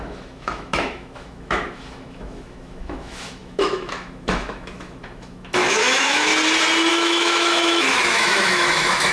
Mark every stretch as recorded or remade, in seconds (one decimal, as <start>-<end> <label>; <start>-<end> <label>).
0.0-6.3 remade; 6.3-6.9 recorded; 6.9-9.1 remade